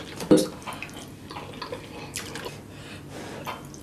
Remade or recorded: recorded